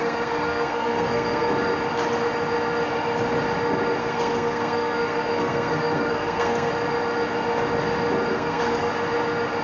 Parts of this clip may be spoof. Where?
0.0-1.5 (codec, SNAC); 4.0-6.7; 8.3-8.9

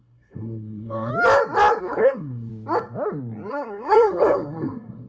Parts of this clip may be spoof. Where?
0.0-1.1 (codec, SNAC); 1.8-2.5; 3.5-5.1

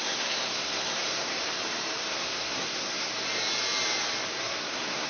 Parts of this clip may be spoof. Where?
0.0-1.4 (codec, SNAC); 2.1-3.1; 4.3-5.1